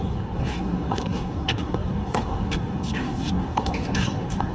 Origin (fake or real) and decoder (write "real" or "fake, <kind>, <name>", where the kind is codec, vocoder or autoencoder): fake, codec, SNAC